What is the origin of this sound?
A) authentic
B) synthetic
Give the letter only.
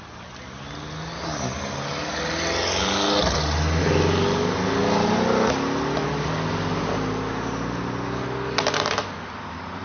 A